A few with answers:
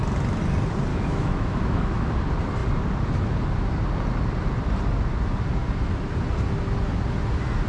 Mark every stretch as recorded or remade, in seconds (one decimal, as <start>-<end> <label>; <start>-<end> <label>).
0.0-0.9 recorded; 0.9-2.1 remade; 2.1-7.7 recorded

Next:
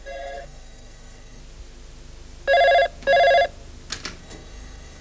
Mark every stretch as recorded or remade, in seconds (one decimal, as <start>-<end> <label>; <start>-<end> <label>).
0.0-1.4 remade; 1.4-4.2 recorded; 4.2-5.0 remade

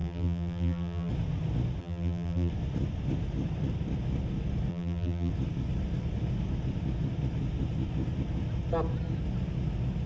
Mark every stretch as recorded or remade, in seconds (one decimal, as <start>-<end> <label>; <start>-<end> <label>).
0.0-1.1 remade; 1.1-1.8 recorded; 1.8-2.5 remade; 2.5-4.7 recorded; 4.7-5.3 remade; 5.3-10.1 recorded

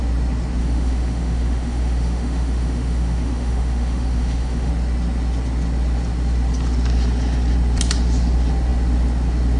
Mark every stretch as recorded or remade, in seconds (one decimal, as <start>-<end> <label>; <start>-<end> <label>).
0.0-0.6 recorded; 0.6-4.7 remade; 4.7-9.6 recorded

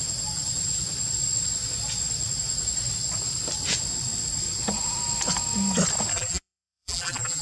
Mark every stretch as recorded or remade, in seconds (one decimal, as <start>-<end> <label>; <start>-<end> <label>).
0.0-6.1 recorded; 6.1-7.4 remade

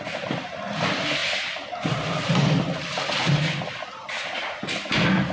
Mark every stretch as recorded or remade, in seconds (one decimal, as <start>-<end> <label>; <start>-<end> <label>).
0.0-5.3 recorded

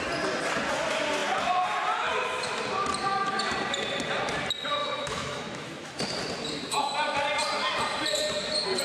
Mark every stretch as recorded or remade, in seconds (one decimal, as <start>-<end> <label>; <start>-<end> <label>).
0.0-4.8 recorded; 4.8-6.0 remade; 6.0-8.8 recorded